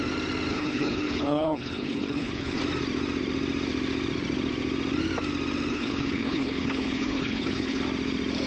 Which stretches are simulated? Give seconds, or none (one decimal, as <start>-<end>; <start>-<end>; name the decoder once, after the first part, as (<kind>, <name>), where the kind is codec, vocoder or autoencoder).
0.5-2.6 (codec, HILCodec); 5.7-7.8